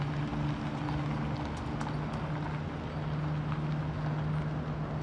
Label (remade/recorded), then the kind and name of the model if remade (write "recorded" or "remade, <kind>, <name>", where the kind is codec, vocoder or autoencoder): recorded